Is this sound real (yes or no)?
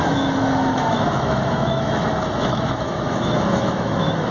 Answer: no